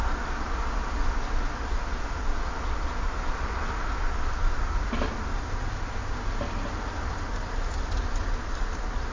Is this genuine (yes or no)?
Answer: yes